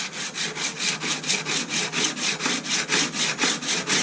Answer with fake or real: real